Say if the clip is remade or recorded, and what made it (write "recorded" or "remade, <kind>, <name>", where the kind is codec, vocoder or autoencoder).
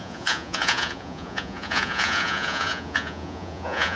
remade, vocoder, Vocos